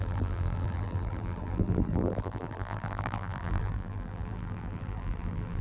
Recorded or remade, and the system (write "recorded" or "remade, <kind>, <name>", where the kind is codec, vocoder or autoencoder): remade, vocoder, BigVGAN v2